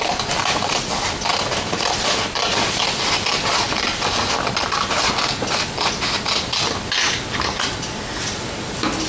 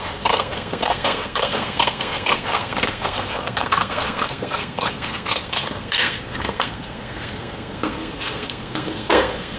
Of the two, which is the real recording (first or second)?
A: first